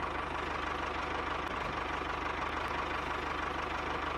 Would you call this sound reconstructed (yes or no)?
no